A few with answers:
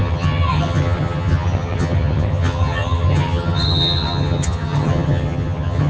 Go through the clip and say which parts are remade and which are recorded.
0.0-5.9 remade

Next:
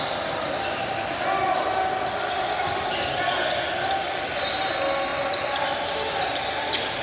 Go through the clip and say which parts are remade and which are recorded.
0.0-7.0 recorded

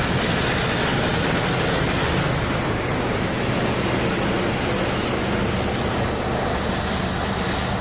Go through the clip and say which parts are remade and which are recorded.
0.0-7.8 recorded